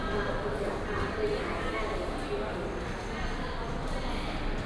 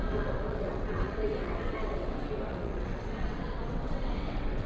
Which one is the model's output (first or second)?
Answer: second